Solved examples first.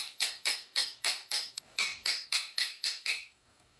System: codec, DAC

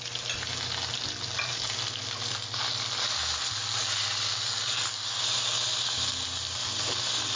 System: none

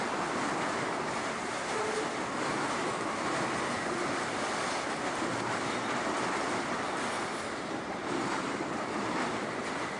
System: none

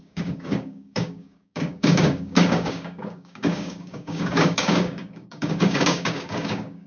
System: codec, DAC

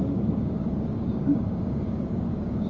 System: codec, DAC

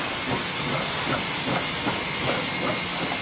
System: none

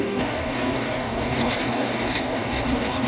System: codec, DAC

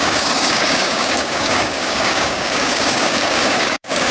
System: codec, DAC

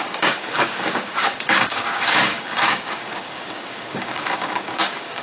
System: codec, DAC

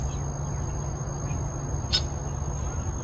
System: none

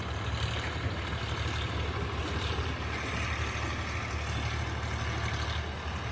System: none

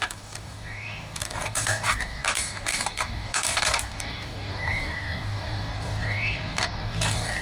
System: codec, DAC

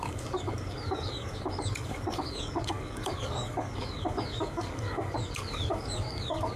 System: codec, DAC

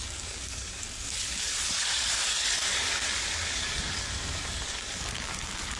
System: codec, DAC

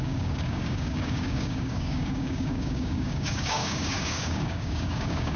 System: codec, DAC